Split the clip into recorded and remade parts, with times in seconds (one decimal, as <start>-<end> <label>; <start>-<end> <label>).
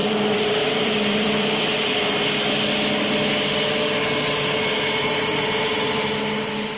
0.0-2.0 remade; 2.0-6.8 recorded